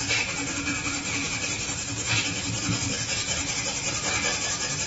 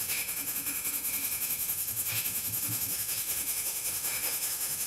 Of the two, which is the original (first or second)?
first